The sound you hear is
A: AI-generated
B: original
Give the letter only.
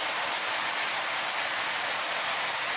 B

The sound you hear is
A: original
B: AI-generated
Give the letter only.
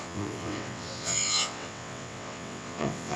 B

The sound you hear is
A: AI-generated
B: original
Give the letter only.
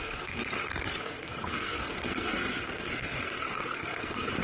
A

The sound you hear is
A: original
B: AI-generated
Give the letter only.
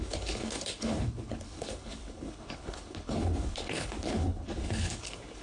B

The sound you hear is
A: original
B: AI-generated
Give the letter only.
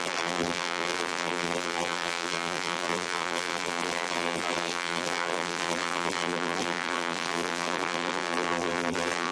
B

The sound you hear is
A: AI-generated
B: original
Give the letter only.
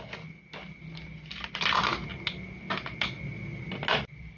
B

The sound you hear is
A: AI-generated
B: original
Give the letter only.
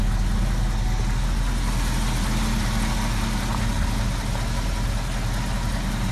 B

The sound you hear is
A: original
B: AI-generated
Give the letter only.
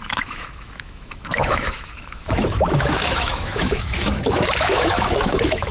B